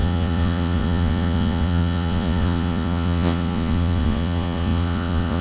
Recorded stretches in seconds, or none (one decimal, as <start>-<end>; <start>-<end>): none